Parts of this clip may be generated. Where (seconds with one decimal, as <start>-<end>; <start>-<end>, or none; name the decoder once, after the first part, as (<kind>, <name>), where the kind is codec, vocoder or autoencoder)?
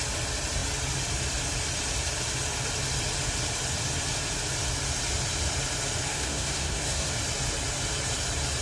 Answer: 6.1-7.1 (codec, SNAC)